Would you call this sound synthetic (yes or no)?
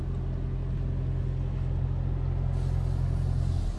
no